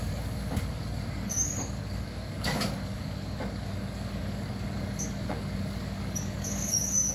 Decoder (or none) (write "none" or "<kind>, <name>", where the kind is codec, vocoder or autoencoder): codec, DAC